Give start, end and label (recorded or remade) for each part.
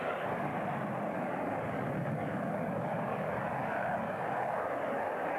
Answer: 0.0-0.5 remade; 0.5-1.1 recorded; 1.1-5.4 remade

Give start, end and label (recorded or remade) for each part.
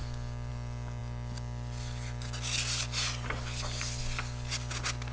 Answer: 0.0-5.1 recorded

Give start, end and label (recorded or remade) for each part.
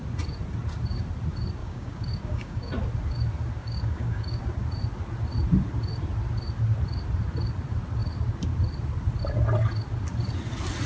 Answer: 0.0-1.6 recorded; 1.6-2.7 remade; 2.7-3.6 recorded; 3.6-4.4 remade; 4.4-10.9 recorded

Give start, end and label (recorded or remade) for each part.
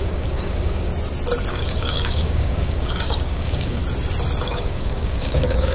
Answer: 0.0-0.9 remade; 0.9-1.5 recorded; 1.5-3.8 remade; 3.8-4.4 recorded; 4.4-5.7 remade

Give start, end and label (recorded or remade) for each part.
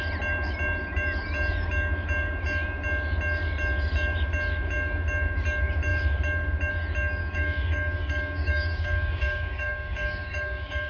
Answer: 0.0-7.2 recorded; 7.2-10.9 remade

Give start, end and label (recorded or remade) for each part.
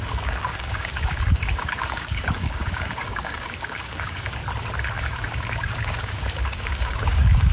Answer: 0.0-4.4 remade; 4.4-5.0 recorded; 5.0-7.5 remade